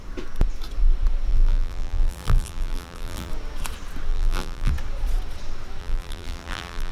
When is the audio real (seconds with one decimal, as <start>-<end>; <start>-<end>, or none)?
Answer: 0.0-1.3; 3.3-4.1; 4.7-5.8